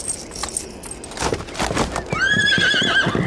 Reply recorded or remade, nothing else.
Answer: recorded